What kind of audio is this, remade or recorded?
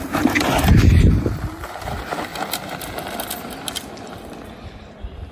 recorded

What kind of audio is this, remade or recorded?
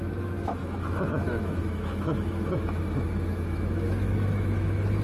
remade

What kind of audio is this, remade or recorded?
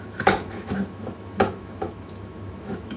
remade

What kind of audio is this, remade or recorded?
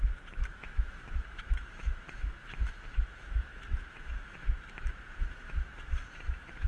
remade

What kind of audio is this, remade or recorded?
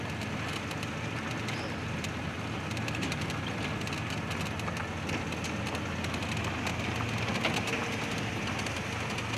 recorded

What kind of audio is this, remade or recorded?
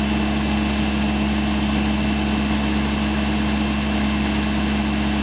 recorded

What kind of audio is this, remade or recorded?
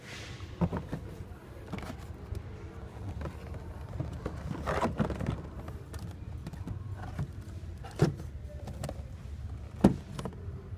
recorded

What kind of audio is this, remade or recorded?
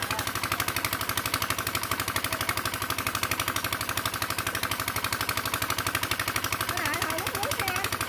recorded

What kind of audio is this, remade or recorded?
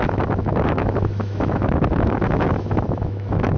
remade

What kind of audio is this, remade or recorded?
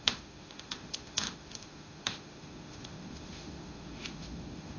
remade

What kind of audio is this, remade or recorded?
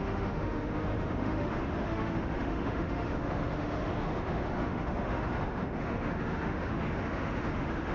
remade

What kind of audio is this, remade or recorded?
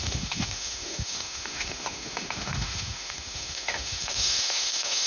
remade